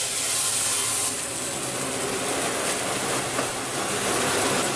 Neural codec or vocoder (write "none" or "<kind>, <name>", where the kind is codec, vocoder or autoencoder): none